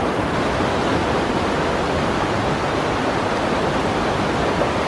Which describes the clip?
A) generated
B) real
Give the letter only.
A